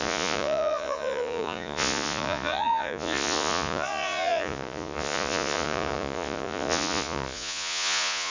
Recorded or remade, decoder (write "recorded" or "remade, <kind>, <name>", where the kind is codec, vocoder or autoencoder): remade, vocoder, Vocos